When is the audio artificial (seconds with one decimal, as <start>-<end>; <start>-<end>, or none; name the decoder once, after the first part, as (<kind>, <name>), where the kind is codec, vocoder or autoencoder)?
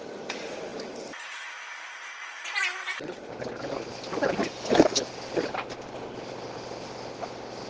4.4-5.1 (autoencoder, DAC-VAE)